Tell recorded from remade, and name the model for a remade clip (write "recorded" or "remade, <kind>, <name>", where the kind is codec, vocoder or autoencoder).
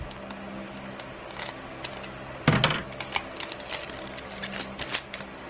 recorded